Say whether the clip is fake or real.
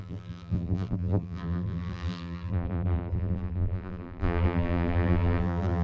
fake